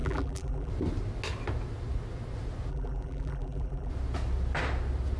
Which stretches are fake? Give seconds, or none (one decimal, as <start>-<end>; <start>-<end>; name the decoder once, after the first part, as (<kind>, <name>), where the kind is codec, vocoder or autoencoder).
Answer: 0.0-0.7 (vocoder, BigVGAN v2); 2.7-3.9